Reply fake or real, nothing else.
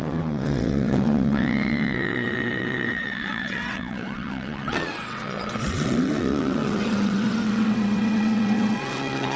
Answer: fake